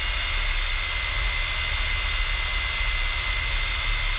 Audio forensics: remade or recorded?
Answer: recorded